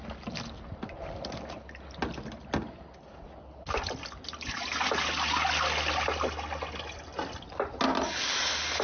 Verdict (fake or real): real